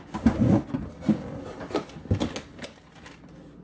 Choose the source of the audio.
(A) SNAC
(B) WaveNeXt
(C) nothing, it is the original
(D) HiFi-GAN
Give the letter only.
C